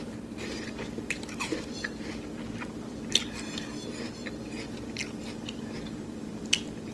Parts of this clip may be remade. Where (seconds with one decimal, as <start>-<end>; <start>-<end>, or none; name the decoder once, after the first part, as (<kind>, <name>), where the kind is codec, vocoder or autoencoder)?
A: none